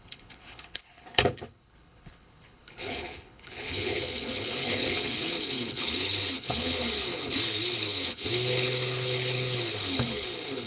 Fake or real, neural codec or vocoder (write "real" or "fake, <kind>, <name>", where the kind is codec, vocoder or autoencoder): fake, codec, HILCodec